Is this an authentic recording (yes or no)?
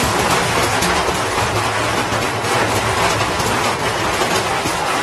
yes